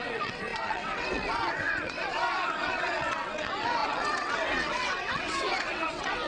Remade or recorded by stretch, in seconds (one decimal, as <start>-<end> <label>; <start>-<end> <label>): 0.0-6.3 remade